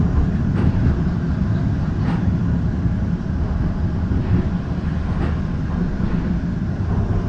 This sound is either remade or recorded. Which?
recorded